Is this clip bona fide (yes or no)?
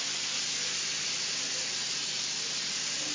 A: yes